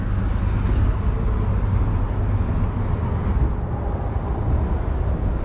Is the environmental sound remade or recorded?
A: recorded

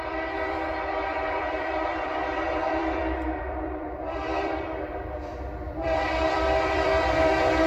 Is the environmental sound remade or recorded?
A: remade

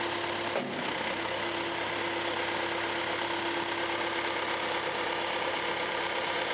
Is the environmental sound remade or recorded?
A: recorded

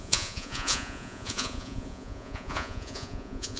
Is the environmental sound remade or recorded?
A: remade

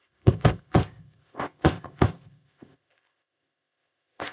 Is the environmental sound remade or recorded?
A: remade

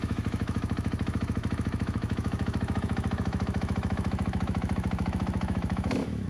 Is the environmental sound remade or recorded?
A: remade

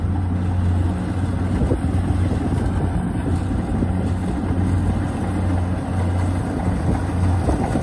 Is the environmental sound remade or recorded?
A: recorded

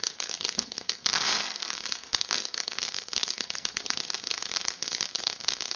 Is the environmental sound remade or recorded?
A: remade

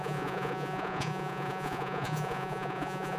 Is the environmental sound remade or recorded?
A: remade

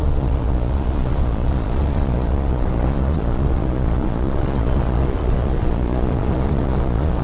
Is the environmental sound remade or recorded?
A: remade